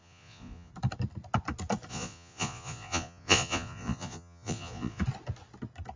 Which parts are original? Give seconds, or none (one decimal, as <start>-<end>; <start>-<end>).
0.7-1.9; 5.0-6.0